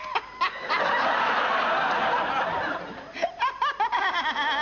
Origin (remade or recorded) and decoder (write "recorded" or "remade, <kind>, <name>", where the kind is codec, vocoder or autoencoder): recorded